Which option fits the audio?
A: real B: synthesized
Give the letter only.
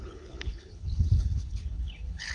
B